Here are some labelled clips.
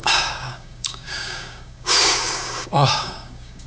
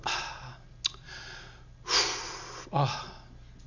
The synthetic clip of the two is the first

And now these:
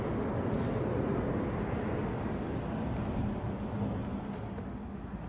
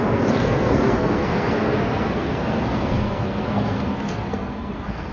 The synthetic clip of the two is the second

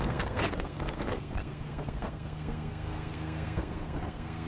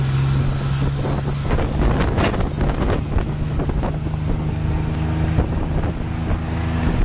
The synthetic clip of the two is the first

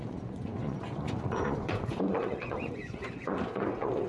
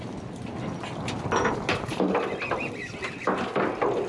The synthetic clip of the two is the first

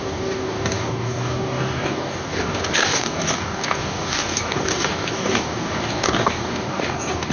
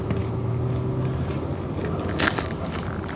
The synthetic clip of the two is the first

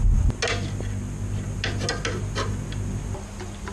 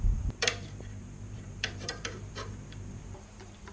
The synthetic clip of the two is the second